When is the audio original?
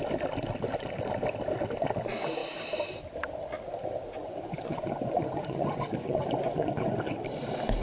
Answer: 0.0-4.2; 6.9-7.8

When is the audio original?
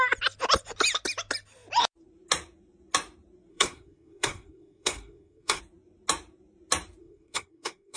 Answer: 0.0-3.5; 5.6-7.0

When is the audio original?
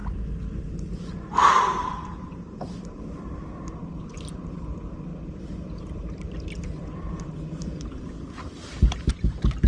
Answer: 0.6-1.4; 2.4-3.8; 4.4-5.1; 9.1-9.7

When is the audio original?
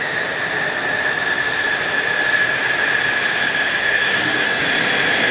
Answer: 0.0-3.8; 4.6-5.3